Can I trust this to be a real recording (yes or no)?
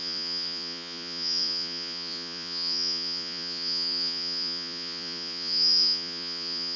no